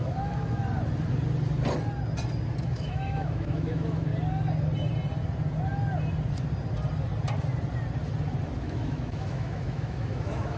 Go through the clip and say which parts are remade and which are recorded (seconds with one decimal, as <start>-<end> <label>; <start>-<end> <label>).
0.0-0.6 remade; 0.6-2.6 recorded; 2.6-4.1 remade; 4.1-8.6 recorded; 8.6-10.6 remade